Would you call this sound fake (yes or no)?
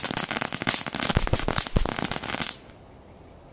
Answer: no